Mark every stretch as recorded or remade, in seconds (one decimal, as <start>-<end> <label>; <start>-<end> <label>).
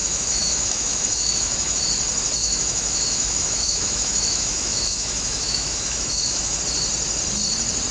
0.0-1.8 remade; 1.8-2.4 recorded; 2.4-6.6 remade; 6.6-7.9 recorded